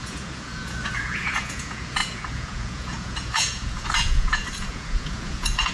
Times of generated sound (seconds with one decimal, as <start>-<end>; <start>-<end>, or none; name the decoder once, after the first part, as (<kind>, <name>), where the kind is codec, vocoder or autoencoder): 0.0-5.7 (vocoder, Vocos)